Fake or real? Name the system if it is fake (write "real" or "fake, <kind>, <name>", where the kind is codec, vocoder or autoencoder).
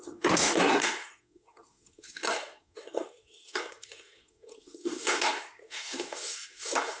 fake, codec, SNAC